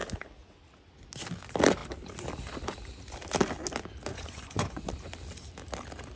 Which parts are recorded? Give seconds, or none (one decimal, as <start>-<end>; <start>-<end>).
0.0-4.1; 4.9-6.2